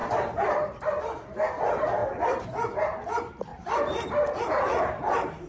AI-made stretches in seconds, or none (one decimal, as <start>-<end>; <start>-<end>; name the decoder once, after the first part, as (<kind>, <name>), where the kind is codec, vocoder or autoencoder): 0.0-0.8 (vocoder, BigVGAN v2); 2.0-2.5; 3.5-5.5